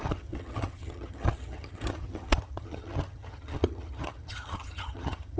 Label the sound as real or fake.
fake